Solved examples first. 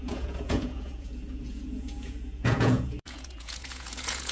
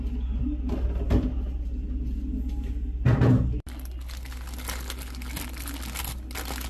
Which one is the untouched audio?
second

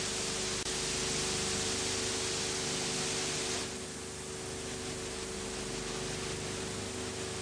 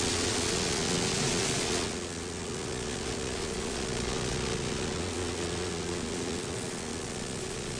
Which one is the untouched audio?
first